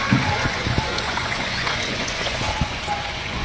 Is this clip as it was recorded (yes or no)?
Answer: no